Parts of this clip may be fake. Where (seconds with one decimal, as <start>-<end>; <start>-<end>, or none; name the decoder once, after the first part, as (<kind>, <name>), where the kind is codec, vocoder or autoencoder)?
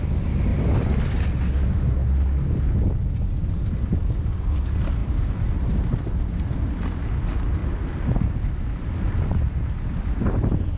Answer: 5.0-6.5 (vocoder, BigVGAN v2); 7.6-9.8